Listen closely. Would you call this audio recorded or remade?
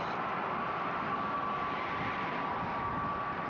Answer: recorded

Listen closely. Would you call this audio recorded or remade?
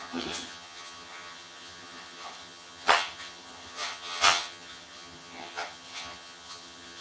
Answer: remade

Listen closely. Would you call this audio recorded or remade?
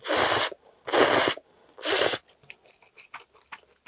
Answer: recorded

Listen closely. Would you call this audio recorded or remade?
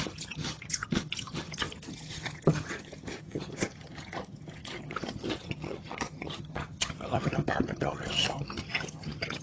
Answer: remade